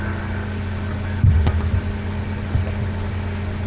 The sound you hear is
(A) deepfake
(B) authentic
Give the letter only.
B